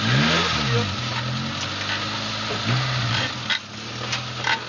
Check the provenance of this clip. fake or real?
real